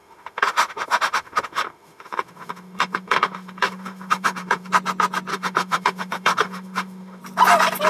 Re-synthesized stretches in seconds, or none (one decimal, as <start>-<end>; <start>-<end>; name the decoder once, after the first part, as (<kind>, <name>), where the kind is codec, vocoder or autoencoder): 0.0-4.7 (autoencoder, DAC-VAE); 5.3-7.2